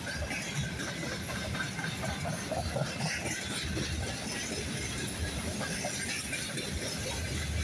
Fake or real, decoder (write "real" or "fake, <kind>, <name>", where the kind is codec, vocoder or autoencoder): real